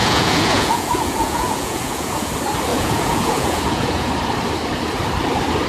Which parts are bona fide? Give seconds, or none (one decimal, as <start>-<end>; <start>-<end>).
2.3-2.7; 4.1-5.7